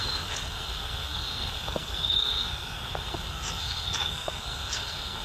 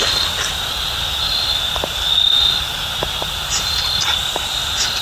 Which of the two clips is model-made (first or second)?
first